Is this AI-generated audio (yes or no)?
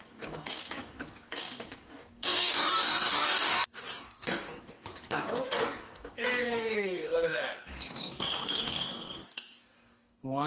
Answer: yes